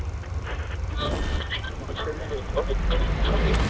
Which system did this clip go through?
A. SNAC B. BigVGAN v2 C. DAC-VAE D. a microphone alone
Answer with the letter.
B